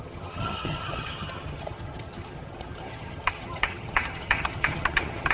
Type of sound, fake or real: fake